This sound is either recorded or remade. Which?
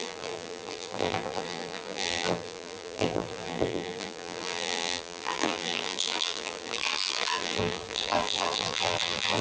remade